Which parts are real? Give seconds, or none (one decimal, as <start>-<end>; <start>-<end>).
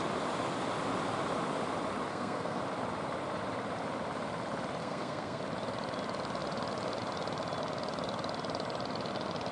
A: 0.0-2.1; 2.6-4.8; 5.4-9.5